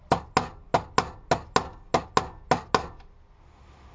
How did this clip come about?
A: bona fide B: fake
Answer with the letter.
A